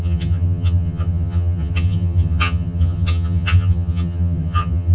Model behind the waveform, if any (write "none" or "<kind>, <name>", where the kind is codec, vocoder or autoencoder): vocoder, HiFi-GAN